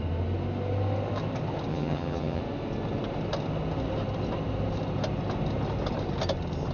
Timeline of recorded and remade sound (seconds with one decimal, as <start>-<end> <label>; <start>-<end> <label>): 0.0-1.7 recorded; 1.7-2.4 remade; 2.4-6.7 recorded